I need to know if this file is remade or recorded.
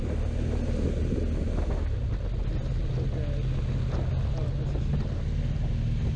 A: recorded